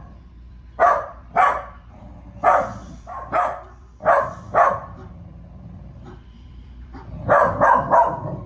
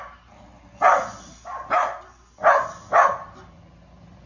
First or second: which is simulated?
first